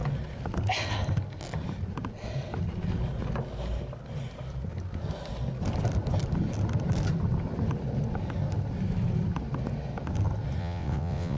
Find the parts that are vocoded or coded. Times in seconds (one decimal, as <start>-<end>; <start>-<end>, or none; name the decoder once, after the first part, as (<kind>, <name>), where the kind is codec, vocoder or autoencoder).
10.6-11.4 (vocoder, WaveNeXt)